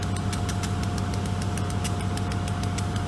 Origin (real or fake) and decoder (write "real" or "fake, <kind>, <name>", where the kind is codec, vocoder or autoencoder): real